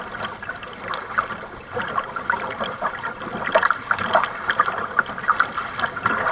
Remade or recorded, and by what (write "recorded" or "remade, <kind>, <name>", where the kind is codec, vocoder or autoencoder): recorded